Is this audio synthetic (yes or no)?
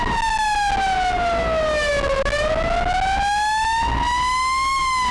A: no